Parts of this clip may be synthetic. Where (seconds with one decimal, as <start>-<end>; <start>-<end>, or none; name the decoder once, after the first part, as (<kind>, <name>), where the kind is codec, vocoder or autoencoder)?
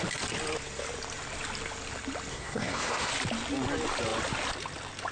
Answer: 2.3-3.1 (codec, SNAC)